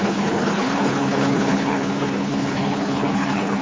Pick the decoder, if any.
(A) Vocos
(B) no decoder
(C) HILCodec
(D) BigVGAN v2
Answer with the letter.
C